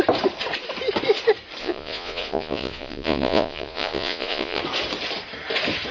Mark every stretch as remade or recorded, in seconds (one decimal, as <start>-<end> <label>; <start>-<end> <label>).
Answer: 0.0-1.6 recorded; 1.6-4.6 remade; 4.6-5.9 recorded